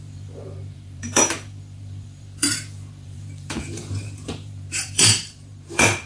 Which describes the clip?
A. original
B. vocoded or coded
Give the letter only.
B